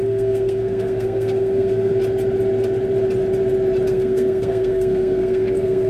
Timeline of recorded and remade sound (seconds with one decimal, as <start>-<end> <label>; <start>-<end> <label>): 0.0-1.9 remade; 1.9-3.9 recorded; 3.9-5.9 remade